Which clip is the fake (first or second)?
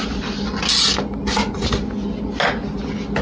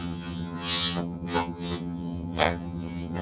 second